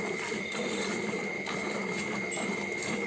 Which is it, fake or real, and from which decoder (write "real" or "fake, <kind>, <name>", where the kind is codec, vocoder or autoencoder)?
real